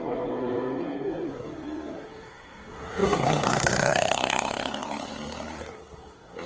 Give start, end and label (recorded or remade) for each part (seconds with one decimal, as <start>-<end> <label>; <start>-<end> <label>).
0.0-6.5 remade